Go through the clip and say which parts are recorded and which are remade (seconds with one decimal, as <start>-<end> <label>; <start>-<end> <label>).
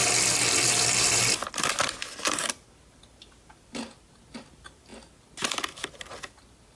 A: 0.0-6.8 recorded